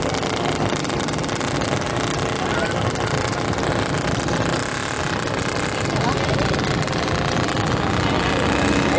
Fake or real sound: real